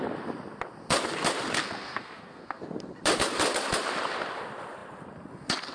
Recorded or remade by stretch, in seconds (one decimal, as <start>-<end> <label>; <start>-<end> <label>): 0.0-1.6 recorded; 1.6-2.6 remade; 2.6-5.7 recorded